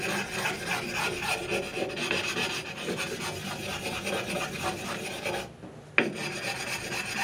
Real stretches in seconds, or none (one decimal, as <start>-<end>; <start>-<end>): 0.0-7.2